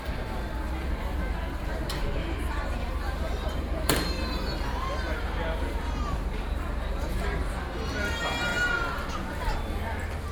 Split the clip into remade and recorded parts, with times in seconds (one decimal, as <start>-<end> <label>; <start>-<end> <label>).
0.0-2.2 recorded; 2.2-7.5 remade; 7.5-10.3 recorded